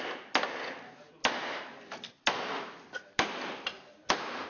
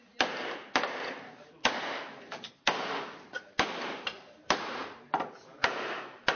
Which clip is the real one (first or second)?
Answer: first